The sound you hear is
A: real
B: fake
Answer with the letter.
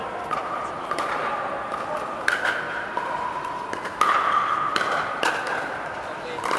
A